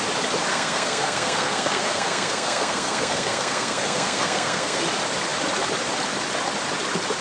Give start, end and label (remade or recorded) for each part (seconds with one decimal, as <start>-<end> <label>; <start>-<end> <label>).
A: 0.0-0.5 recorded; 0.5-4.8 remade; 4.8-7.2 recorded